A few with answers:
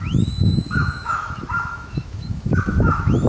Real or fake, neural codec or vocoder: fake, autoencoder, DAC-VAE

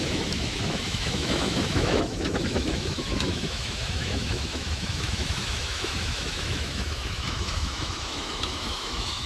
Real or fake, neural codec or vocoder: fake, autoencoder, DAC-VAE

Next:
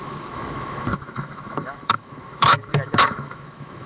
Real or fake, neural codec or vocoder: fake, autoencoder, DAC-VAE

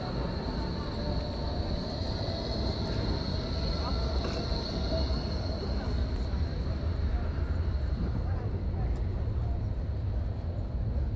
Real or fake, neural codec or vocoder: real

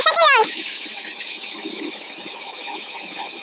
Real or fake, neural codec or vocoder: fake, autoencoder, DAC-VAE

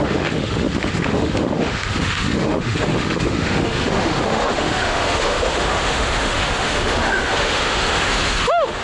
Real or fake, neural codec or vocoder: fake, autoencoder, DAC-VAE